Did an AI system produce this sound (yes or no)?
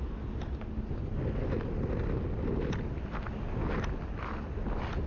no